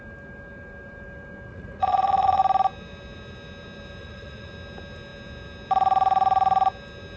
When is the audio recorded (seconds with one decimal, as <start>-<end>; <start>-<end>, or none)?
0.0-1.5; 2.4-4.0; 4.5-7.2